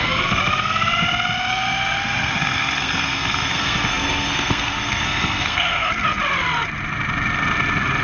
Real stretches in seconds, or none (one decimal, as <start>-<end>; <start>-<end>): 0.4-1.5; 5.9-8.0